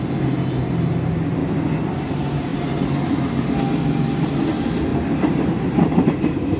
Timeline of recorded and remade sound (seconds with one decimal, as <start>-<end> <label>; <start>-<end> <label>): 0.0-2.5 recorded; 2.5-3.6 remade; 3.6-4.9 recorded; 4.9-6.6 remade